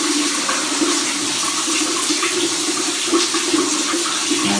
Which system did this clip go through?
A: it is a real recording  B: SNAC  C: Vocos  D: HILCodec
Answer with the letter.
A